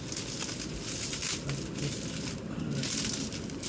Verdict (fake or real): real